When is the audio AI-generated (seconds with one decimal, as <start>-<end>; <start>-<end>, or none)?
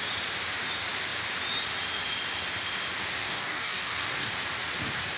3.2-4.3